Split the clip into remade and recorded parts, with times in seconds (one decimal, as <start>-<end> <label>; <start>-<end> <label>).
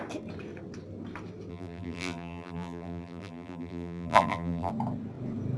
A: 0.0-1.5 recorded; 1.5-4.7 remade; 4.7-5.6 recorded